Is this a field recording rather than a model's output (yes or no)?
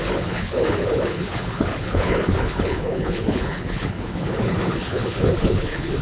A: no